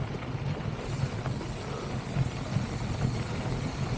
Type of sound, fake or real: real